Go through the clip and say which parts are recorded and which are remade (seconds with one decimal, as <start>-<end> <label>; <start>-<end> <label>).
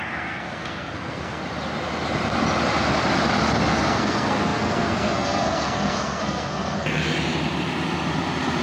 0.0-1.4 remade; 1.4-3.7 recorded; 3.7-7.1 remade; 7.1-8.6 recorded